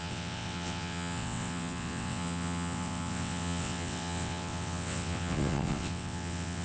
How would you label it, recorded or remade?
remade